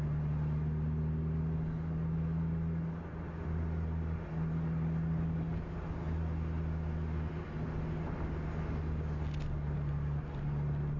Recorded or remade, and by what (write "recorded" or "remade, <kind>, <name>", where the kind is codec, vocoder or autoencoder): recorded